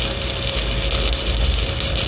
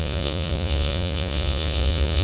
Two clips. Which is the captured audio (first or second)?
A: first